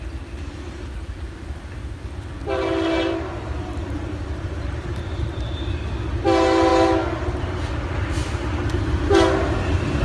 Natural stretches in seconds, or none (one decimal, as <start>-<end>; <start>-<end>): 0.0-2.4; 5.9-10.0